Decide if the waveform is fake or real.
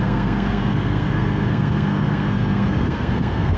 fake